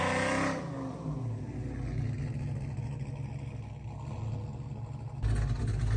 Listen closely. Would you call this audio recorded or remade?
recorded